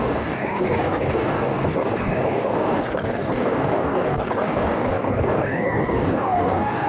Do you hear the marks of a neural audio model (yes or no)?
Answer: yes